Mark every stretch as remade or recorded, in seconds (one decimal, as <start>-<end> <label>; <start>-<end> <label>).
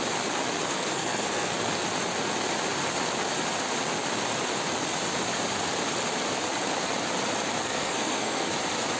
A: 0.0-0.7 recorded; 0.7-1.5 remade; 1.5-7.6 recorded; 7.6-8.5 remade; 8.5-9.0 recorded